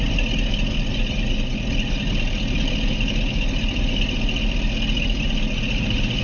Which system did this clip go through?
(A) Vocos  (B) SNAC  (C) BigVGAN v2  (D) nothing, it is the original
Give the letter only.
D